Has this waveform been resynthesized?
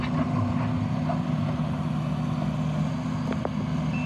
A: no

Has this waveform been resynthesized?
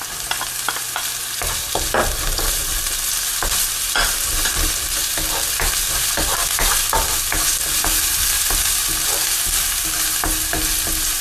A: no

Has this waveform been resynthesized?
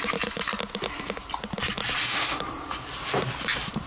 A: no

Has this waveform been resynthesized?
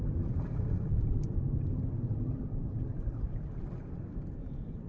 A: yes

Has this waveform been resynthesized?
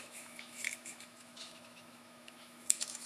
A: yes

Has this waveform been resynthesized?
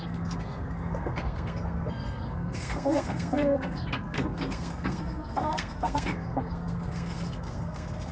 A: yes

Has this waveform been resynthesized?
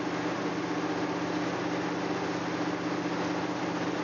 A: no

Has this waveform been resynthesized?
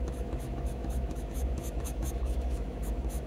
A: yes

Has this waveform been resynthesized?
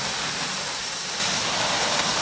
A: no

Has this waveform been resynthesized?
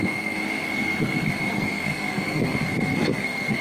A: yes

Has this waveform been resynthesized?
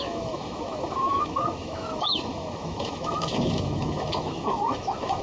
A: yes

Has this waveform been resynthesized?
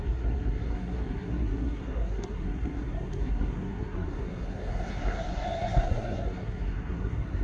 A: yes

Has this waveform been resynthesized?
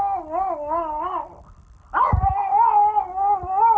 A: no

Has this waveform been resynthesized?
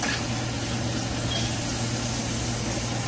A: no